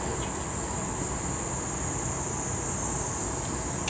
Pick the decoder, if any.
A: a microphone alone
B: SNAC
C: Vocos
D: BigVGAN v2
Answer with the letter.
A